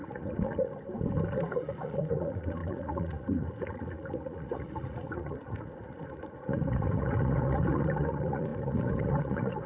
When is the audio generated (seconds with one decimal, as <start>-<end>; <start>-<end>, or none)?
0.0-0.7; 1.3-9.7